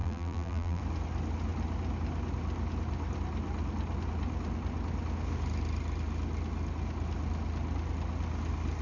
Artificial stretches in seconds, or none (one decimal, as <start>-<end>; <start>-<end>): 0.0-0.8